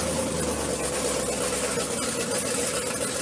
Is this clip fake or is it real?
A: real